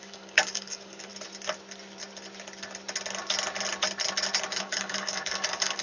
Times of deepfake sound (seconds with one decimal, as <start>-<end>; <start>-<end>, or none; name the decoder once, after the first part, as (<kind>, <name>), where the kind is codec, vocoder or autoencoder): 0.0-1.1 (codec, DAC); 4.6-5.8

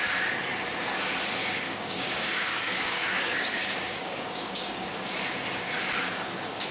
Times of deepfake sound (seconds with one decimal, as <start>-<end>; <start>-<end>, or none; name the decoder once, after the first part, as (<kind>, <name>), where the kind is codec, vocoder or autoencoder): 1.4-4.9 (codec, DAC)

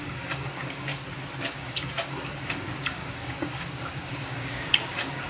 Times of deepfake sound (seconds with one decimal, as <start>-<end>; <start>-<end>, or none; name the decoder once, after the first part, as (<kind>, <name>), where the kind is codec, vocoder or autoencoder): 0.0-0.9 (codec, DAC); 1.4-5.3

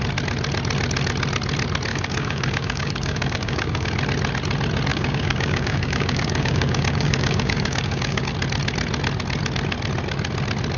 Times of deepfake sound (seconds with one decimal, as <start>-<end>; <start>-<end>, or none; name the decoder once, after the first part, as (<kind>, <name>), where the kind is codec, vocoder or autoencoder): 1.9-3.9 (codec, DAC); 4.9-8.3